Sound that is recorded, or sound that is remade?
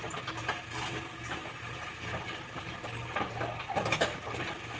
recorded